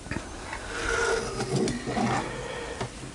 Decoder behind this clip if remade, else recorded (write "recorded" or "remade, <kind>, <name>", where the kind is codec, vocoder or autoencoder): recorded